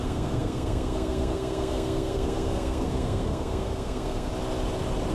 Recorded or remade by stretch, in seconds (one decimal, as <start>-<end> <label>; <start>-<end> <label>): 0.0-4.3 remade; 4.3-5.1 recorded